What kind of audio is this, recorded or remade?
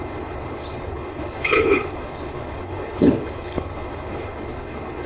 remade